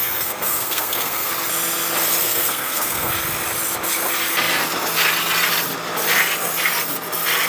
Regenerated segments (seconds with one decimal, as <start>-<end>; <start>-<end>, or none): 0.0-1.3; 2.2-3.1